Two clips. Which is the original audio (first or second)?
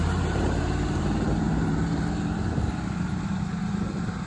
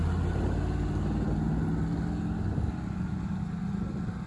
second